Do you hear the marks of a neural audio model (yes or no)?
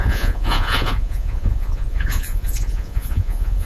yes